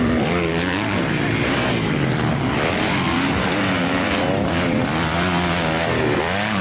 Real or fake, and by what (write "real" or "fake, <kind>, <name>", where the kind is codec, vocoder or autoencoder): real